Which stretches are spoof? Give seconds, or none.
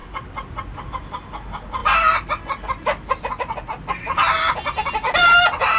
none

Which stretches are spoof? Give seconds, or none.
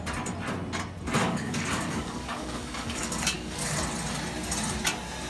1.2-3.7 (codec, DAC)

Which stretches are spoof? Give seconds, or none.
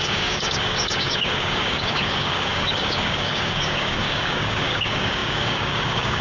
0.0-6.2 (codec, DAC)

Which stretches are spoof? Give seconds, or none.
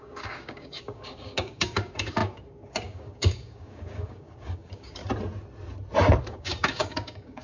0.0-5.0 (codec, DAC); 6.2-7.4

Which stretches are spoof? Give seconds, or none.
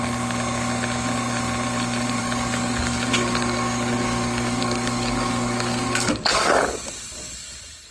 2.2-6.6 (codec, DAC)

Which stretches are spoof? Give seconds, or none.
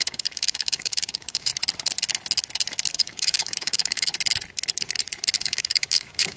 0.0-1.5 (codec, DAC); 2.9-4.1; 5.4-6.4